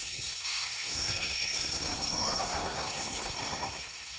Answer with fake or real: fake